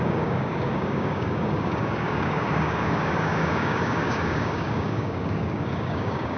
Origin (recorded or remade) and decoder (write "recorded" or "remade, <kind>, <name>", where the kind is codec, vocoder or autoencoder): remade, codec, DAC